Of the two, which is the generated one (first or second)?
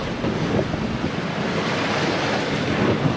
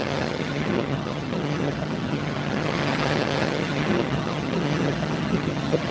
second